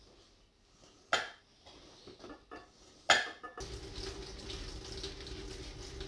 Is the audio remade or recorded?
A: recorded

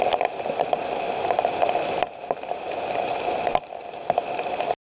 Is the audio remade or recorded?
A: recorded